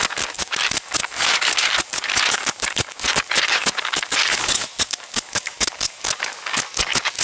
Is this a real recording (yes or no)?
no